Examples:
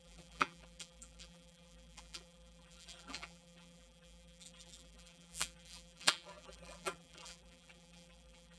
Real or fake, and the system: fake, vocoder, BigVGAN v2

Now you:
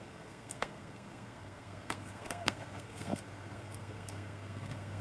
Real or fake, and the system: fake, codec, SNAC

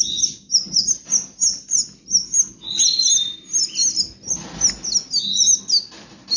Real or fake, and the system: real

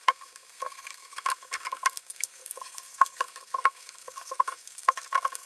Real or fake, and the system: fake, codec, SNAC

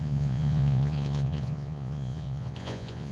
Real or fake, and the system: fake, vocoder, Vocos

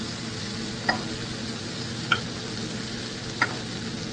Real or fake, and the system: real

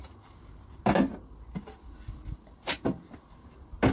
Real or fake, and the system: real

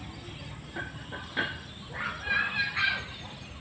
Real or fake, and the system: real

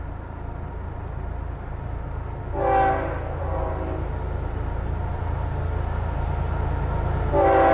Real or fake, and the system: real